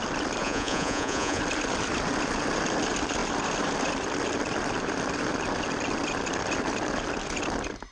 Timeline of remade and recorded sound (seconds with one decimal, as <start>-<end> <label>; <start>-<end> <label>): 0.0-0.4 recorded; 0.4-1.4 remade; 1.4-7.9 recorded